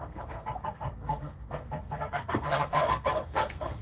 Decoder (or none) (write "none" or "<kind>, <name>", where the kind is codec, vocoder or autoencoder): codec, SNAC